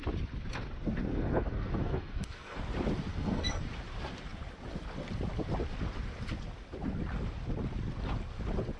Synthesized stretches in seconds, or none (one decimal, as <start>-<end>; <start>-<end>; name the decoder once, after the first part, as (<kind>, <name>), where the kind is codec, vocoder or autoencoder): 1.1-2.6 (codec, SNAC); 3.1-3.6